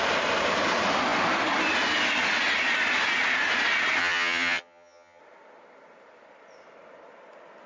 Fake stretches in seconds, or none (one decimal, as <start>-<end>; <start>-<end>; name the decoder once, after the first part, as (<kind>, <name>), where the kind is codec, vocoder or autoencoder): 4.0-5.2 (vocoder, HiFi-GAN)